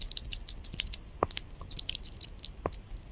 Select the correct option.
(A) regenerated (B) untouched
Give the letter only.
B